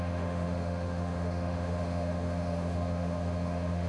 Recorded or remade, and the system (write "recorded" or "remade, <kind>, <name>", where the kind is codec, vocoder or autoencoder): remade, autoencoder, DAC-VAE